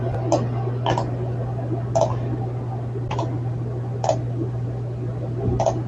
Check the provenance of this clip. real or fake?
real